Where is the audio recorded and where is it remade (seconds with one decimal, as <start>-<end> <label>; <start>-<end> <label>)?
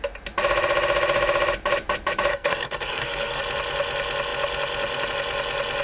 0.0-2.3 recorded; 2.3-3.4 remade; 3.4-5.8 recorded